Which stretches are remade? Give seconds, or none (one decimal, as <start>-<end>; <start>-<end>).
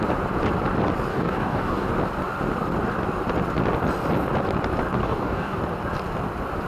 1.1-1.9; 5.0-5.6